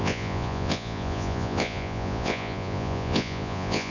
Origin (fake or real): fake